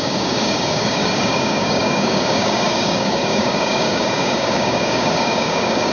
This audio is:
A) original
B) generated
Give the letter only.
B